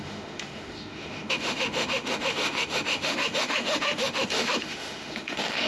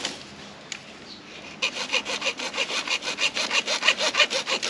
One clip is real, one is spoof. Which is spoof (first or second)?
first